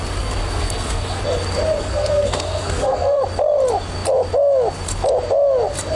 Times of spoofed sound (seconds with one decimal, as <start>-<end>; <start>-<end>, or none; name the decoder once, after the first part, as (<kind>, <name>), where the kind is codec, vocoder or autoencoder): 0.4-1.2 (codec, SNAC); 1.8-3.2